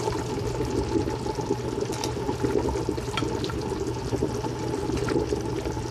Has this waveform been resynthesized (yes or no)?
no